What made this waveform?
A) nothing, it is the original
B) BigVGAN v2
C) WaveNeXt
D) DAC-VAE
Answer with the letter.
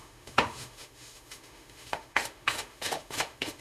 D